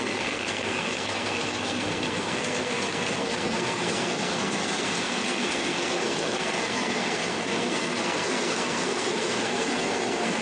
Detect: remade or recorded remade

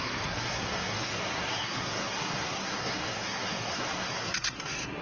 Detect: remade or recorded remade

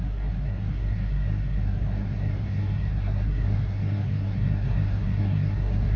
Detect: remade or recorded remade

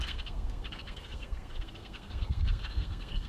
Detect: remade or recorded remade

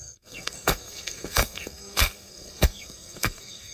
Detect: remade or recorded remade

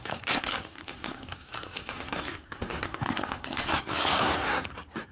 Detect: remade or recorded remade